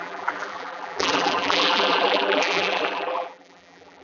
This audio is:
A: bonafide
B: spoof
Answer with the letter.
B